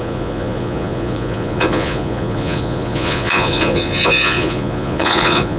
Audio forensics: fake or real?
fake